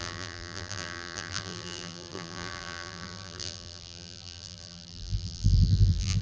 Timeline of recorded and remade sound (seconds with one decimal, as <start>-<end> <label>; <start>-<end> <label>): 0.0-6.2 remade